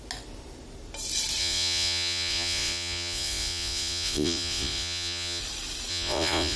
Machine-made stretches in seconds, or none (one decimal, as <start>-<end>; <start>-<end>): 1.4-5.4; 5.9-6.6